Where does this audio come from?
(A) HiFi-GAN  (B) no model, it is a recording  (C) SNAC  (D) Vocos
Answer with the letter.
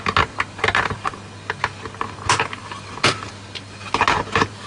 B